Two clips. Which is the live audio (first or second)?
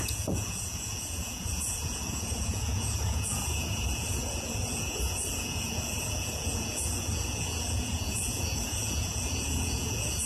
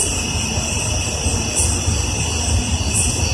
second